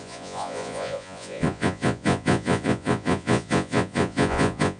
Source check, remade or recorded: remade